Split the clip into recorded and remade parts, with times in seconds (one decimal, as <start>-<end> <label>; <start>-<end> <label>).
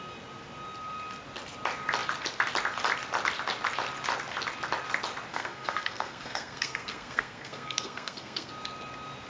0.0-5.3 recorded; 5.3-8.5 remade; 8.5-9.3 recorded